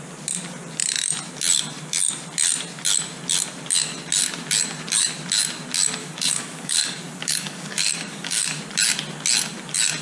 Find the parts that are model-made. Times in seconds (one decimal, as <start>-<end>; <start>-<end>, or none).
6.0-8.6